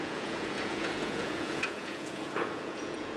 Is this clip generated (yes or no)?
yes